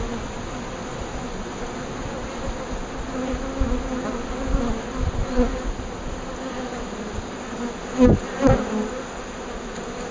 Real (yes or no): yes